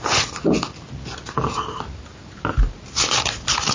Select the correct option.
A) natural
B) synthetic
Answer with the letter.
A